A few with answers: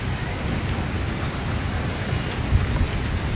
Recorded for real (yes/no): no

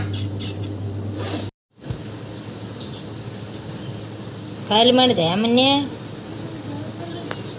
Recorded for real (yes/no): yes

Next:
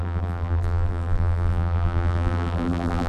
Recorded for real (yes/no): no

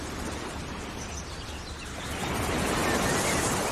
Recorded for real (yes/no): yes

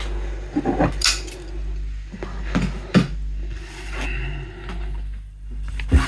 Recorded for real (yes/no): yes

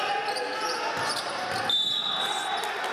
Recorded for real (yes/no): yes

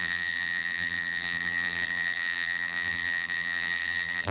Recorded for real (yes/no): no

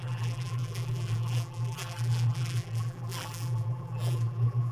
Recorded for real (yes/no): no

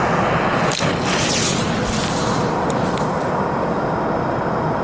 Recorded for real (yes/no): no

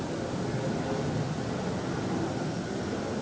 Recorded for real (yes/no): yes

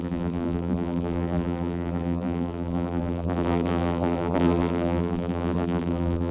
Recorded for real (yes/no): no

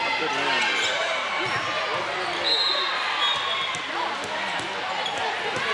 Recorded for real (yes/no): yes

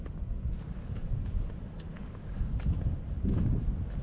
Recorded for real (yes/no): yes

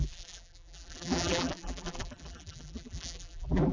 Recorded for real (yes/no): no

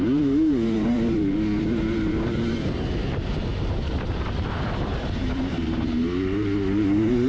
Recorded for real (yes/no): no